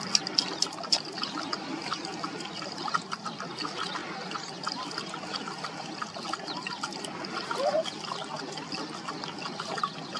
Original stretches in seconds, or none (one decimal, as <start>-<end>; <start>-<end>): 0.0-10.2